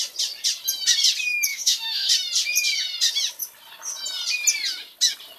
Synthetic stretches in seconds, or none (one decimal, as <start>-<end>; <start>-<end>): 1.5-2.1